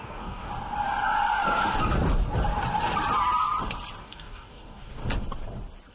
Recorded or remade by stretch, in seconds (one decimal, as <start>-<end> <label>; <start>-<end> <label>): 0.0-0.5 remade; 0.5-4.0 recorded; 4.0-5.0 remade; 5.0-5.9 recorded